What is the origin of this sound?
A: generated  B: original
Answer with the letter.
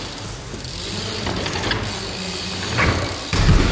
B